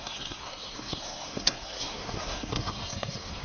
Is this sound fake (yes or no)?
yes